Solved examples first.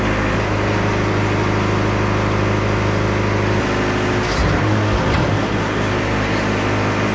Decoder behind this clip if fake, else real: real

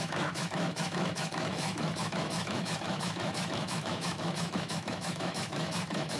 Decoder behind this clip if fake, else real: fake, autoencoder, DAC-VAE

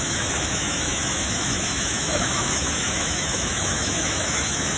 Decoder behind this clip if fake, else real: fake, autoencoder, DAC-VAE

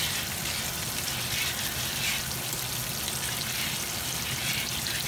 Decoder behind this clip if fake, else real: real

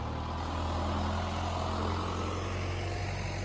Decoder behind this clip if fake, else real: real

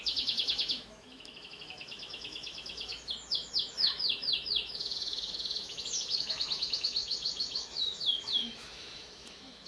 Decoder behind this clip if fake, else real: fake, autoencoder, DAC-VAE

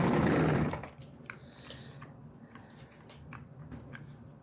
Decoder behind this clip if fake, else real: real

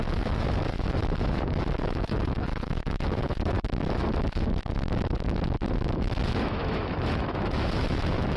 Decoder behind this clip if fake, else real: fake, autoencoder, DAC-VAE